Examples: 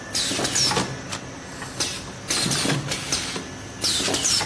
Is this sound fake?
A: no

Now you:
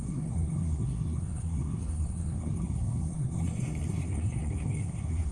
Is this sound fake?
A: yes